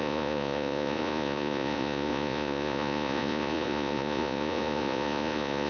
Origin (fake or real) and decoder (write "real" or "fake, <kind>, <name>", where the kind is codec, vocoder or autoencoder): fake, vocoder, Vocos